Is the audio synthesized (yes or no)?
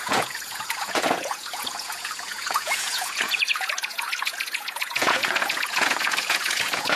yes